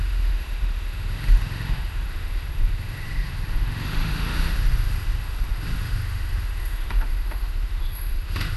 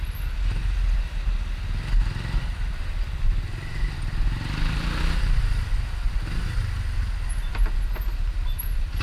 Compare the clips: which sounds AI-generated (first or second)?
first